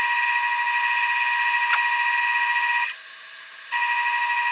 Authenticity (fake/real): real